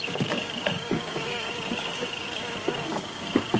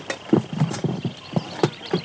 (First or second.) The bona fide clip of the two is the second